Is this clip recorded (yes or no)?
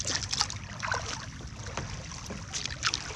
yes